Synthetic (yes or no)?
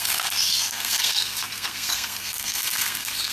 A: yes